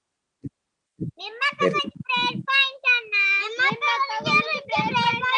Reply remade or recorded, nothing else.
recorded